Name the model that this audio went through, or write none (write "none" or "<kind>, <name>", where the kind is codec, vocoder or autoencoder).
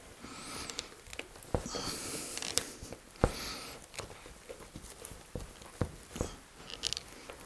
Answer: none